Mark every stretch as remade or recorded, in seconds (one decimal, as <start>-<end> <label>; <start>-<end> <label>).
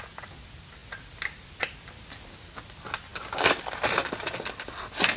0.0-5.2 recorded